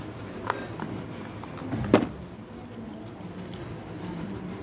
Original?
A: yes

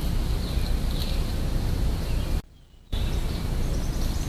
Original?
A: yes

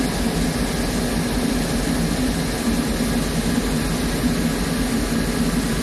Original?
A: yes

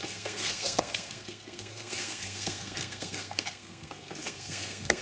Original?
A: no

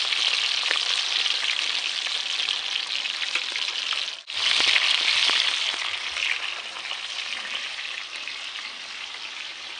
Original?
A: yes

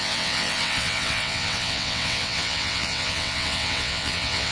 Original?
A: no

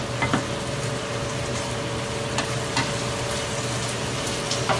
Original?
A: yes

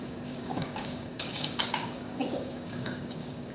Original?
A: no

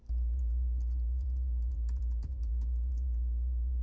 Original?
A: no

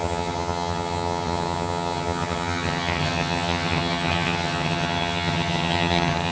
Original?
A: no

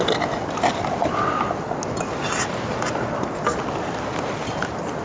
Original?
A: yes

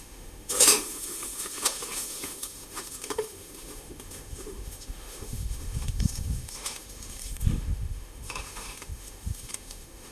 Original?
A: no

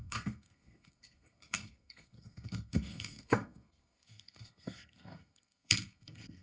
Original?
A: no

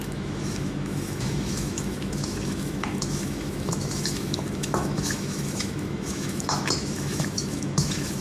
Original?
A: no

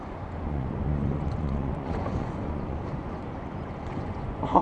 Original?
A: no